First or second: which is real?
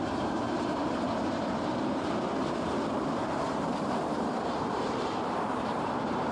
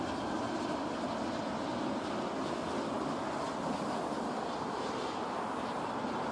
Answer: second